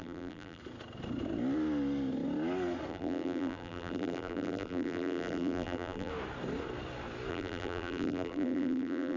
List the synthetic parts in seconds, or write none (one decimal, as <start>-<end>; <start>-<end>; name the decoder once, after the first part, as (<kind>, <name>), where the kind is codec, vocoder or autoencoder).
0.0-0.6 (vocoder, BigVGAN v2); 2.9-6.1; 7.3-9.2